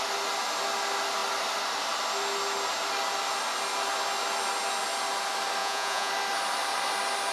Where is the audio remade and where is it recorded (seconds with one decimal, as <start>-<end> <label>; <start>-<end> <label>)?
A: 0.0-5.6 recorded; 5.6-6.1 remade; 6.1-7.3 recorded